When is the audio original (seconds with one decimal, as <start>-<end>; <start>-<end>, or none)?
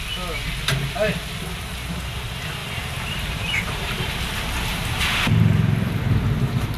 0.0-2.6; 4.1-4.7; 6.2-6.8